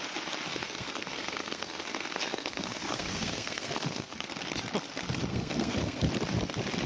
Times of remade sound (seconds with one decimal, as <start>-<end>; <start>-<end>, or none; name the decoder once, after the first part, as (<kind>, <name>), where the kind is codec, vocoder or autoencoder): 0.5-4.3 (codec, SNAC); 5.3-6.1

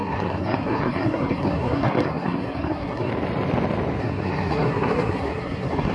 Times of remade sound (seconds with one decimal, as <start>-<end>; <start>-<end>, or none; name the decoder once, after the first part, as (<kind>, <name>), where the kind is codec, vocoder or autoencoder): 0.0-3.1 (codec, SNAC); 4.0-5.9

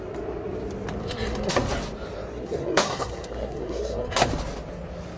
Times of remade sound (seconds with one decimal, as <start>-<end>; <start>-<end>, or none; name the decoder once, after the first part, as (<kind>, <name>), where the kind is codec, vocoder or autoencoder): 1.0-1.5 (codec, SNAC); 2.3-4.3

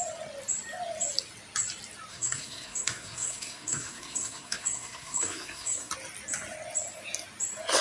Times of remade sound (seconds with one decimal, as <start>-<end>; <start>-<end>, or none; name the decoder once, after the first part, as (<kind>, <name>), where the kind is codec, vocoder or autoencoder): 2.1-5.9 (codec, SNAC)

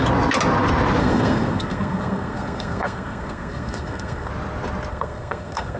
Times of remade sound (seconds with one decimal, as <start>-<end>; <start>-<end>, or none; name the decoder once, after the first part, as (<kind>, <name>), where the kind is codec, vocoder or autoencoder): 1.0-4.3 (codec, SNAC); 4.9-5.8